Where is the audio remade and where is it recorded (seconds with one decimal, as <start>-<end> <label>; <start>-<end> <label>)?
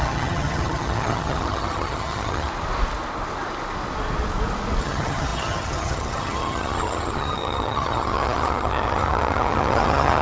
0.0-2.5 remade; 2.5-4.8 recorded; 4.8-10.2 remade